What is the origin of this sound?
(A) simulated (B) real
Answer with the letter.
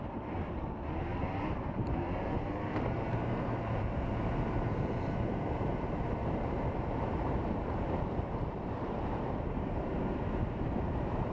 A